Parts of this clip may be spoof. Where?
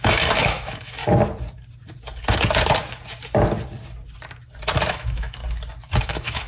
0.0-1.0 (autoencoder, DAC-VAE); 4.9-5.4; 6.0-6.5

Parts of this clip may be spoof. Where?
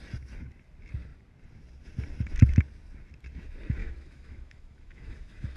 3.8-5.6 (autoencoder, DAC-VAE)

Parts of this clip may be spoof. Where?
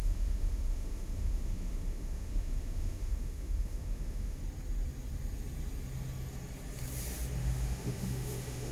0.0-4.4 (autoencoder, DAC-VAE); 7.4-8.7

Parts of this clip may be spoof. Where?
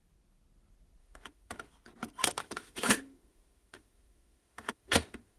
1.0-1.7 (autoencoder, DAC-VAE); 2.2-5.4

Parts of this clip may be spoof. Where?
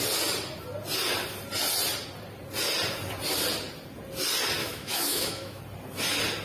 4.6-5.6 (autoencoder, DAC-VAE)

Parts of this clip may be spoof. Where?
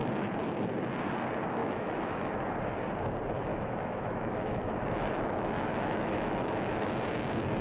1.6-2.3 (autoencoder, DAC-VAE); 3.5-6.9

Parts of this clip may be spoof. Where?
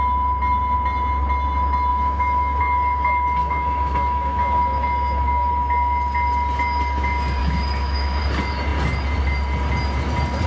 1.9-2.6 (autoencoder, DAC-VAE); 3.4-5.5; 7.4-8.2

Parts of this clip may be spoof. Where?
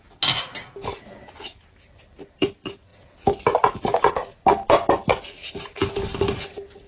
none